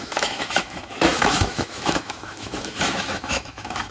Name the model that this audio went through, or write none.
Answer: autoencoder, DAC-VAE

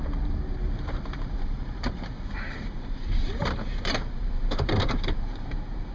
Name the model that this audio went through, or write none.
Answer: vocoder, BigVGAN v2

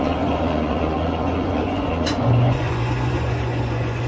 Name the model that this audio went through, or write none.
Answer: vocoder, Vocos